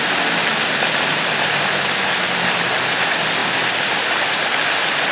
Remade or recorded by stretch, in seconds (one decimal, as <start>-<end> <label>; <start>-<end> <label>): 0.0-5.1 recorded